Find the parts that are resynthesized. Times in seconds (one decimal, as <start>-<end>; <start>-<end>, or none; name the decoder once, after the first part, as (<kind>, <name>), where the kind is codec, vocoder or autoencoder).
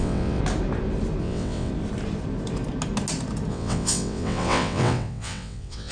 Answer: 0.0-0.4 (vocoder, WaveNeXt); 1.2-1.7; 3.5-5.9